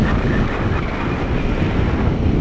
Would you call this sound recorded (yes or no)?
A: yes